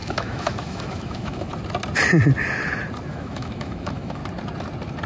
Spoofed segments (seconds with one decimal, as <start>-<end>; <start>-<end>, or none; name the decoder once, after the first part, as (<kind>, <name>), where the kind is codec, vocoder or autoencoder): 0.0-1.5 (autoencoder, DAC-VAE); 3.1-4.2